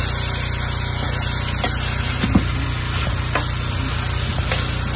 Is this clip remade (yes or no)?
no